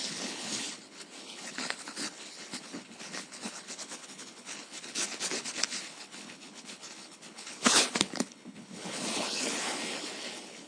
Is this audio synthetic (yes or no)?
yes